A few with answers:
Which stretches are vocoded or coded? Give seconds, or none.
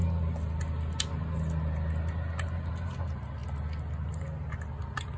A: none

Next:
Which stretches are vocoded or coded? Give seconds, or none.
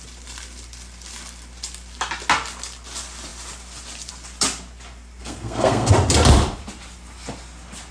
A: 5.2-5.9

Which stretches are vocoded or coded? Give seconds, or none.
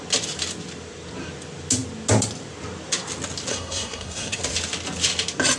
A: 3.5-4.4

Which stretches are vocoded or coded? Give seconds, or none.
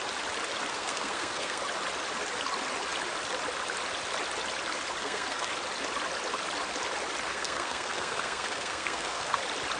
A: 0.7-1.6; 5.0-5.5; 7.3-9.4